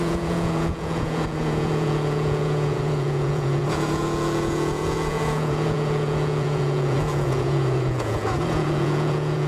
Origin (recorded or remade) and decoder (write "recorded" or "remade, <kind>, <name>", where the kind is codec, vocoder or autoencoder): remade, vocoder, Vocos